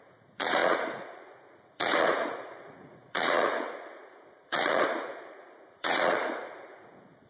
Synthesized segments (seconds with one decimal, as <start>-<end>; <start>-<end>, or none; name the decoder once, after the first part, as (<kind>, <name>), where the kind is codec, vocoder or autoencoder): 0.0-7.3 (vocoder, Vocos)